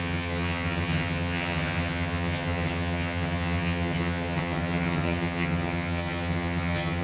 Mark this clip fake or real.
fake